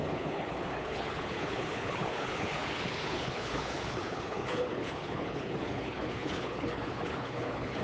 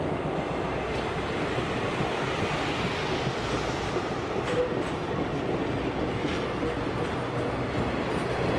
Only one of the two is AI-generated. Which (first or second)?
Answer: first